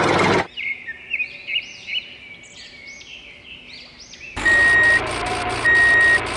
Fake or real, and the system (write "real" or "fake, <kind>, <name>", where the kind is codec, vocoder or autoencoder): real